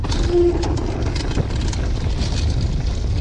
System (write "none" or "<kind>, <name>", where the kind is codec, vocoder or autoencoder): none